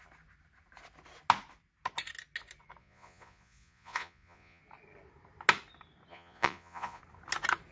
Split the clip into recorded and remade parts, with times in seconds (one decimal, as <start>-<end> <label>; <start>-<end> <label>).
0.0-2.8 recorded; 2.8-4.6 remade; 4.6-6.1 recorded; 6.1-7.0 remade; 7.0-7.7 recorded